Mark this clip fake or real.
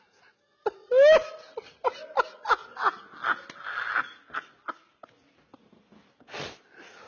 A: real